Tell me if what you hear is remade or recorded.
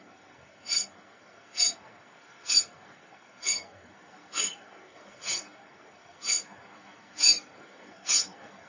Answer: remade